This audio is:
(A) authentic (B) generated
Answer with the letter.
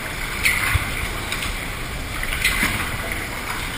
A